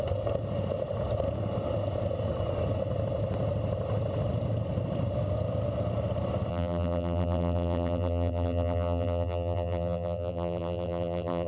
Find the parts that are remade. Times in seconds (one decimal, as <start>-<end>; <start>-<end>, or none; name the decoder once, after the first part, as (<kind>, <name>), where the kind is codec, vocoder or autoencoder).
6.5-11.5 (vocoder, BigVGAN v2)